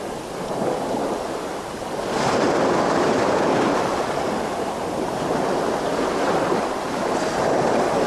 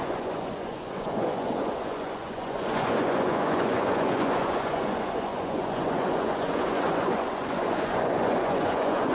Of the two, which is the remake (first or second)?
second